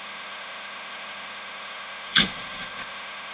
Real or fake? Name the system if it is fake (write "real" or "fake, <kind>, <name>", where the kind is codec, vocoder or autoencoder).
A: fake, autoencoder, DAC-VAE